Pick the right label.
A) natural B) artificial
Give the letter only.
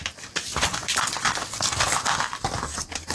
A